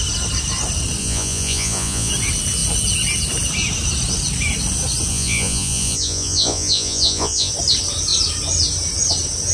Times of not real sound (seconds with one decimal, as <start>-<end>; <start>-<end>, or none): 1.0-2.1; 5.1-7.5